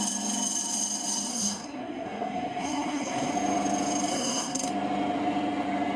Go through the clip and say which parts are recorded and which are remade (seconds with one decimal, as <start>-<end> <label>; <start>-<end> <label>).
0.0-1.3 recorded; 1.3-3.3 remade; 3.3-4.1 recorded; 4.1-4.7 remade; 4.7-6.0 recorded